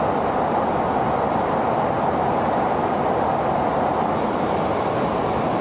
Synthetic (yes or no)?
no